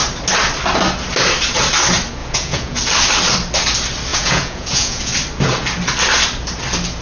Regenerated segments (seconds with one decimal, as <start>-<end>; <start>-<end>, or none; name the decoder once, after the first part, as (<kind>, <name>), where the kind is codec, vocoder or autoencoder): 2.2-2.8 (vocoder, Vocos); 4.1-5.1